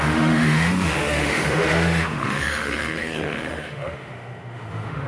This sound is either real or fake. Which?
fake